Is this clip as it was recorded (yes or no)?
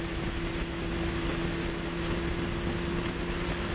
yes